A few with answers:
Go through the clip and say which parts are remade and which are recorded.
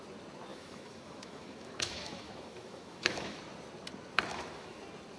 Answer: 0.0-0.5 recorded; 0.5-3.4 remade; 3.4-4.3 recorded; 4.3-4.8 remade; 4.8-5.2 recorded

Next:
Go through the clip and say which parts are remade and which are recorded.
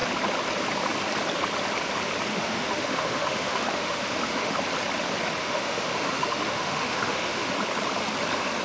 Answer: 0.0-2.3 recorded; 2.3-4.6 remade; 4.6-5.4 recorded; 5.4-7.5 remade; 7.5-8.6 recorded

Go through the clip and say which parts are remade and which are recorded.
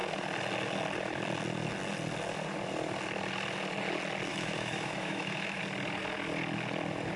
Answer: 0.0-4.3 recorded; 4.3-5.6 remade; 5.6-7.2 recorded